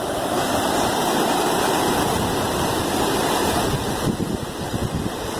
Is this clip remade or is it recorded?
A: remade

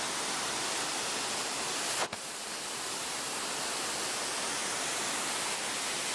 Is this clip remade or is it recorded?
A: recorded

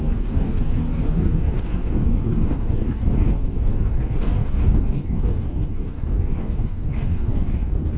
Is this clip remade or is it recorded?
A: remade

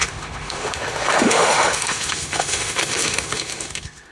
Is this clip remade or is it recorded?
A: remade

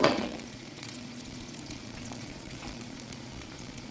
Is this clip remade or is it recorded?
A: remade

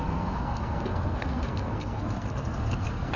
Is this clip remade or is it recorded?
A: remade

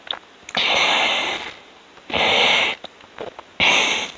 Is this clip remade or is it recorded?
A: recorded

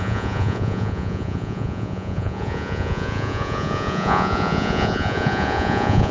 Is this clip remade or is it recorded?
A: remade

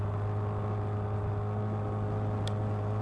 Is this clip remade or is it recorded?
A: recorded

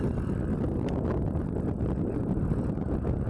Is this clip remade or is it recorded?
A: recorded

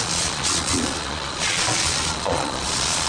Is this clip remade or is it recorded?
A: remade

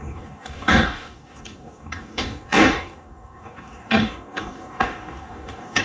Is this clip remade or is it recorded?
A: remade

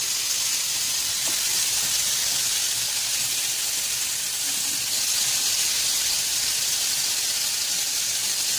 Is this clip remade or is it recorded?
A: recorded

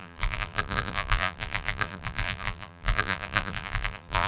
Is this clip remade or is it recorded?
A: remade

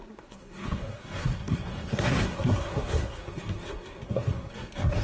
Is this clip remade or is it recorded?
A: remade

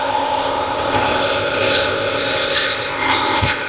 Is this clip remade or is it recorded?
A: remade